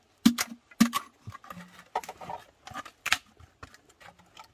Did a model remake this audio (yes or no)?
no